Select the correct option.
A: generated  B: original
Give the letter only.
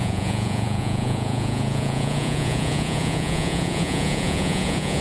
A